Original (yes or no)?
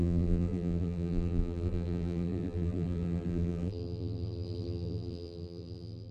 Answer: no